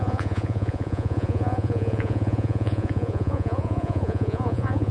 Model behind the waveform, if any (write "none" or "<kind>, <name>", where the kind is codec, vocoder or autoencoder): vocoder, Vocos